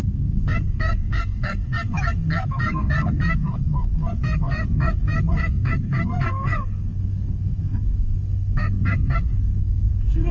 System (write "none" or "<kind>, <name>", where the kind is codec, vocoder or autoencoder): codec, SNAC